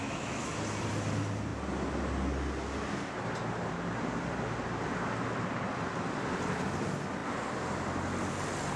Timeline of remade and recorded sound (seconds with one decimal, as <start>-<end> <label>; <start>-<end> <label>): 0.0-0.5 remade; 0.5-8.8 recorded